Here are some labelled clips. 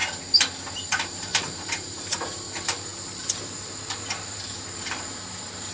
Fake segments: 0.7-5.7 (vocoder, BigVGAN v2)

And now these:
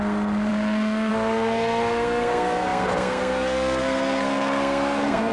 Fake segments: 0.0-5.3 (codec, SNAC)

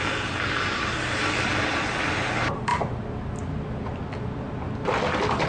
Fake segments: none

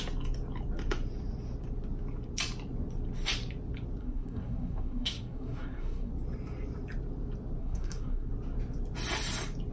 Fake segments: 4.0-6.1 (codec, SNAC); 7.6-8.3

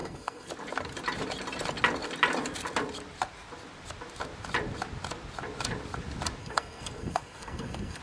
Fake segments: 0.0-0.5 (codec, SNAC); 6.4-8.0

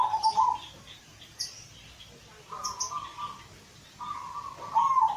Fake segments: 0.0-2.3 (vocoder, BigVGAN v2)

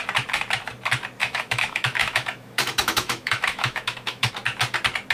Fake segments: 1.2-4.3 (autoencoder, DAC-VAE)